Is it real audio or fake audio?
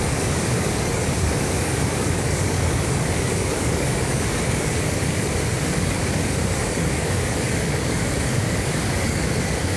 fake